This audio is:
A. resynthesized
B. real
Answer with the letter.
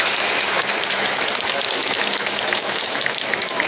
A